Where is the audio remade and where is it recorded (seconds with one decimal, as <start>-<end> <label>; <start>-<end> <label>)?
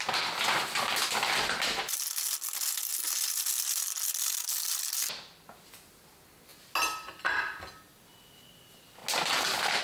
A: 0.0-9.8 recorded